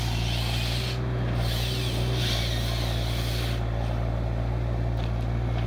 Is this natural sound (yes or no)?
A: yes